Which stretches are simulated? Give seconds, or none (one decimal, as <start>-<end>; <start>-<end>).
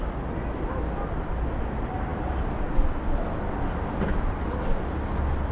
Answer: none